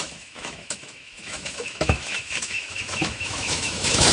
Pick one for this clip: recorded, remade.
remade